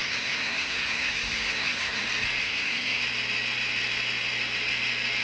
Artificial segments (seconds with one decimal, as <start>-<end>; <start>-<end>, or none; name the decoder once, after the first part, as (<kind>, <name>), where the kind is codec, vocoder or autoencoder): 0.0-2.0 (codec, SNAC); 2.4-3.0